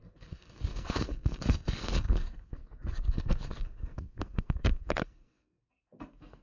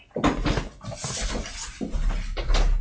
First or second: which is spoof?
first